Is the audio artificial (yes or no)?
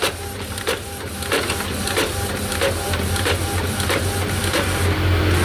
no